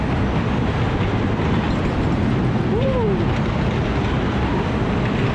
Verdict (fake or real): real